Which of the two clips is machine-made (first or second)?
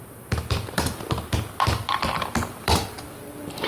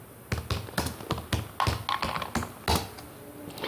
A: first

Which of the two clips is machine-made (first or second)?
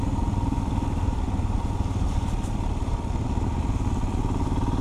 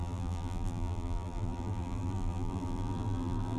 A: second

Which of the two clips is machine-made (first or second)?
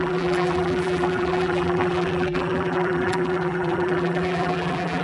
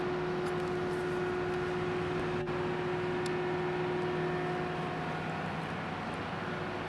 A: first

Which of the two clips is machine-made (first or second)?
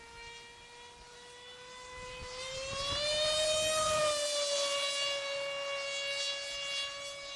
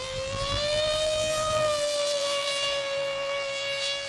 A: second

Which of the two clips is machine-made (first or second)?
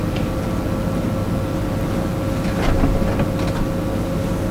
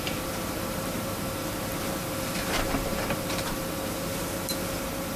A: second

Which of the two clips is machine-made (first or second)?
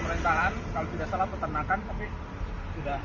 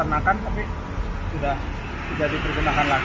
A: first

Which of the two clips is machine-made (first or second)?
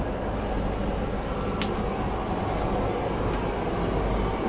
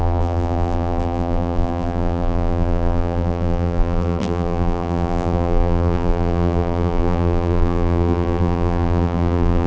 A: second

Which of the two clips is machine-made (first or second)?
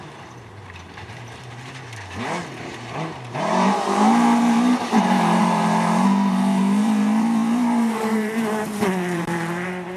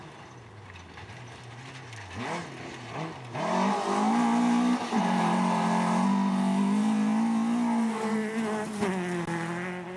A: first